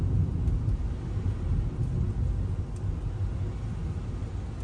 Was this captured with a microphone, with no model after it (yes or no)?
yes